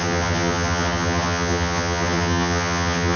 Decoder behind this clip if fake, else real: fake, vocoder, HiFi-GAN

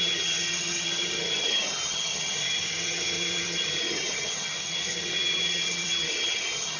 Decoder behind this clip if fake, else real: fake, vocoder, HiFi-GAN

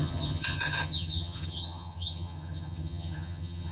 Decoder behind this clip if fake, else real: fake, vocoder, HiFi-GAN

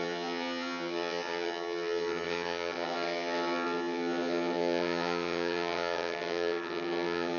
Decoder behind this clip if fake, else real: fake, vocoder, HiFi-GAN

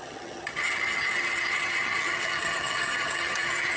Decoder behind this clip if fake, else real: fake, vocoder, HiFi-GAN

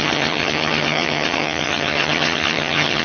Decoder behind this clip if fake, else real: fake, vocoder, HiFi-GAN